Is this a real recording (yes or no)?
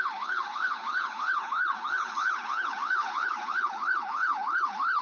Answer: no